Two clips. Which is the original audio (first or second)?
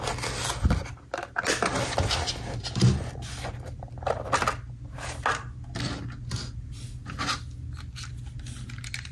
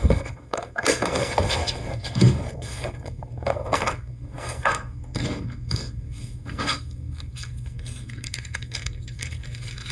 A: first